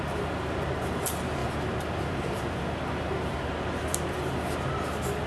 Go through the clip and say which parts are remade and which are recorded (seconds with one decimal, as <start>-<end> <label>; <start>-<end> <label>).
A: 0.0-1.4 recorded; 1.4-3.5 remade; 3.5-5.3 recorded